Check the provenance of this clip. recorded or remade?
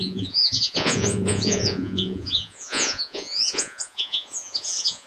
remade